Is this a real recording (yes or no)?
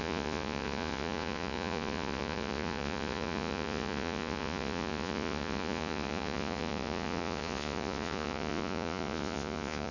no